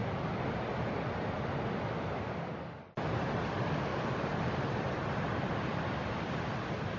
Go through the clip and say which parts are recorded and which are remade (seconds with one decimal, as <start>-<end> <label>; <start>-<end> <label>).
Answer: 0.0-7.0 recorded